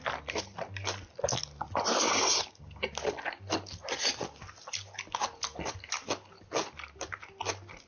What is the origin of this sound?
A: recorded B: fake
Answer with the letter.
A